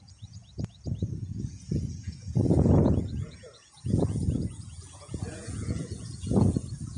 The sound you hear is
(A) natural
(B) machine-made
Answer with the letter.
B